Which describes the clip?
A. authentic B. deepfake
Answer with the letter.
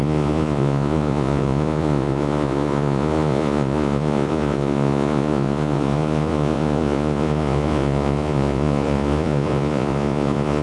B